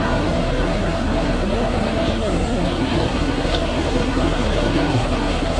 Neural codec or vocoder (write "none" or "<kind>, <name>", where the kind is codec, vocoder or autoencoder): codec, SNAC